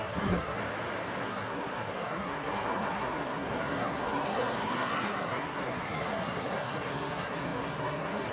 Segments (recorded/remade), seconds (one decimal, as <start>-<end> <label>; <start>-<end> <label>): 0.0-0.6 remade; 0.6-1.2 recorded; 1.2-8.3 remade